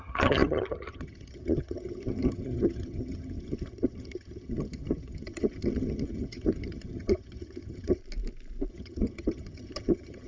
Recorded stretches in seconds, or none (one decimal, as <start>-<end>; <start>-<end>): 8.0-8.7